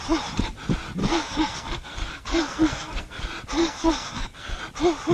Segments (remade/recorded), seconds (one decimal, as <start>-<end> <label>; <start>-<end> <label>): 0.0-1.0 recorded; 1.0-3.2 remade; 3.2-3.6 recorded; 3.6-4.6 remade; 4.6-5.1 recorded